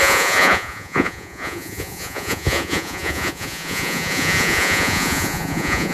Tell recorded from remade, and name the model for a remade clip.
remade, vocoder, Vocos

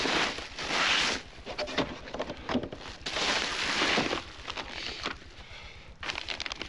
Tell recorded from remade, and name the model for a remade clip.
recorded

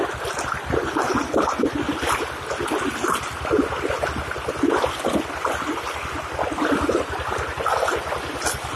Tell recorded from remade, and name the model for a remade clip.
recorded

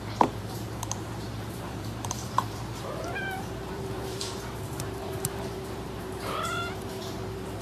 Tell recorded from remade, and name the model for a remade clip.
remade, vocoder, BigVGAN v2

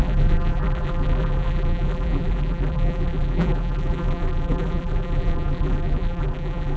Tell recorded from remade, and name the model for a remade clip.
remade, vocoder, BigVGAN v2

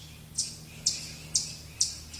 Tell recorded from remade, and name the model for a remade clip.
recorded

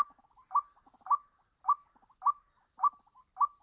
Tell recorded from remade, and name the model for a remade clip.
recorded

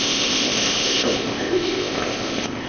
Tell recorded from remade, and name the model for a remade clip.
remade, codec, ZipCodec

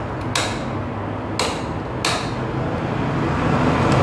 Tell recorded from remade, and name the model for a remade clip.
recorded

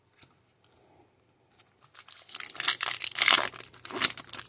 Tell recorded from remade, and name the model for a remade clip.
recorded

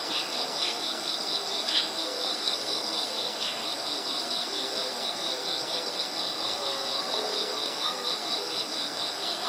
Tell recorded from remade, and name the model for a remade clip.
remade, codec, SNAC